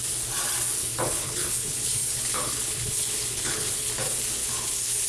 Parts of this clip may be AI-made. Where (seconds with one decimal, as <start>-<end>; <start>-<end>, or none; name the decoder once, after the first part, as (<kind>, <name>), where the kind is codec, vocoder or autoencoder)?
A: 0.8-3.9 (codec, HILCodec); 4.4-5.1